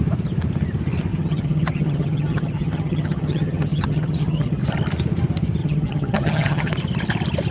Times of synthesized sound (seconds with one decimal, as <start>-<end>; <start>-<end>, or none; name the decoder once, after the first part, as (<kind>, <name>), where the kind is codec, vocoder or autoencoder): 1.1-4.6 (vocoder, HiFi-GAN); 5.6-6.7